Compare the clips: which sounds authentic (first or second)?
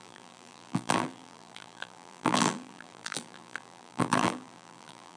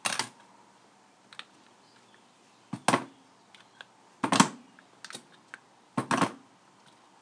second